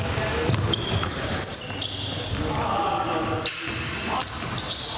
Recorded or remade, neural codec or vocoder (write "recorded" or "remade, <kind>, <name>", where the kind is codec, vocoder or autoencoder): recorded